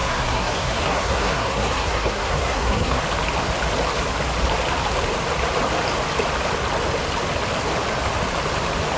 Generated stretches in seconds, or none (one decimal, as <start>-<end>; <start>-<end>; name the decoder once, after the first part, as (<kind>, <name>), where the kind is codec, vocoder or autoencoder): 0.0-3.0 (codec, SNAC)